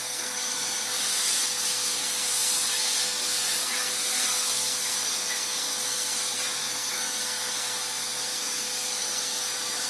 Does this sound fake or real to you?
fake